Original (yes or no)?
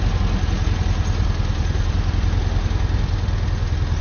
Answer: yes